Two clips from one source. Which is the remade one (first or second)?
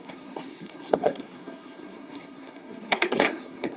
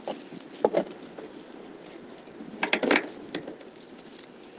first